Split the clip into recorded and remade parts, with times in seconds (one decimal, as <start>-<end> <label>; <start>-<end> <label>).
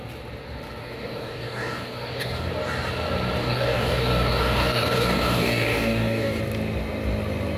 0.0-0.8 recorded; 0.8-2.5 remade; 2.5-3.4 recorded; 3.4-6.4 remade; 6.4-7.6 recorded